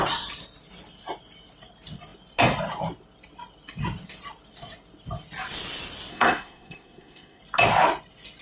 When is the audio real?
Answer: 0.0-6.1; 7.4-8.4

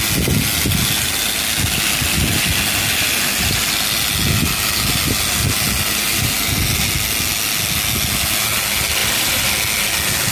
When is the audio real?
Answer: 0.0-9.0; 9.5-10.3

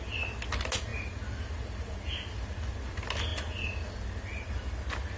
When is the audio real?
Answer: 0.0-5.2

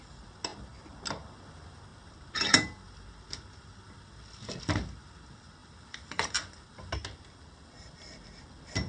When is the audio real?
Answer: 0.0-5.6; 6.9-8.9

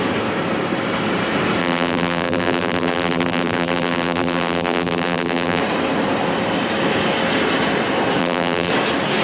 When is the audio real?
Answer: 0.0-1.6; 5.6-8.2; 8.7-9.2

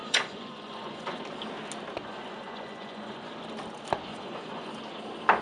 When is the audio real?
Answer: 1.2-2.0; 3.3-4.1; 4.7-5.4